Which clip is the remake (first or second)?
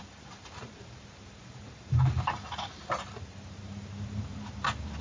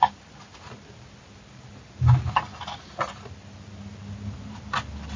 first